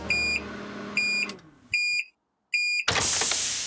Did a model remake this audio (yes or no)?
no